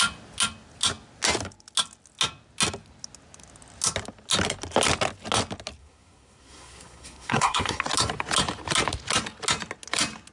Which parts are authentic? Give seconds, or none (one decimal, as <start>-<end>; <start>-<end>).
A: 0.0-5.8; 7.8-10.3